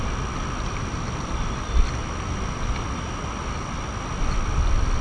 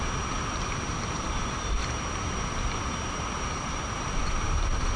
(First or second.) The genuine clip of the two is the first